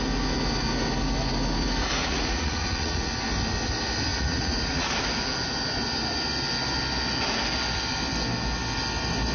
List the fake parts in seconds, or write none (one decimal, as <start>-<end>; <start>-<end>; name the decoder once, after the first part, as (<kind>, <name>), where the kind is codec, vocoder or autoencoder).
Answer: 2.0-3.1 (vocoder, Vocos); 4.1-4.9